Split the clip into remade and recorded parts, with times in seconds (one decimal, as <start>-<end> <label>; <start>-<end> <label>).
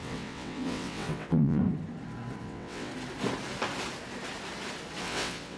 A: 0.0-1.6 remade; 1.6-2.4 recorded; 2.4-2.9 remade; 2.9-5.0 recorded; 5.0-5.6 remade